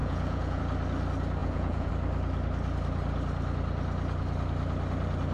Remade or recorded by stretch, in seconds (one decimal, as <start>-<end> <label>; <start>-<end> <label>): 0.0-0.6 remade; 0.6-1.4 recorded; 1.4-1.9 remade; 1.9-5.3 recorded